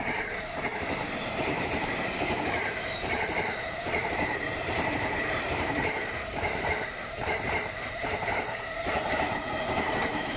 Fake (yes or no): yes